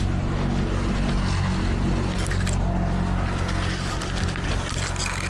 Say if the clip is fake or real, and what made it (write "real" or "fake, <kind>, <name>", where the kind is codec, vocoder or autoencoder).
real